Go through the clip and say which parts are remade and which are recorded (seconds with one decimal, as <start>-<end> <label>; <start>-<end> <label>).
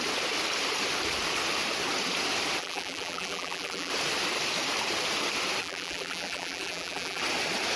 0.0-2.6 recorded; 2.6-3.9 remade; 3.9-5.6 recorded; 5.6-7.2 remade; 7.2-7.8 recorded